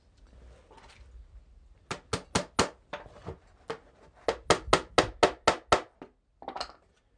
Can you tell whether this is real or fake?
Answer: real